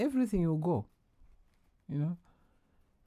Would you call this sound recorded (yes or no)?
yes